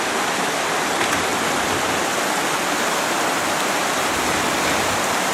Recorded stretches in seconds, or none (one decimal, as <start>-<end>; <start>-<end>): 0.0-5.3